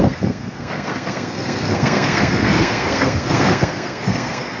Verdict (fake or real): fake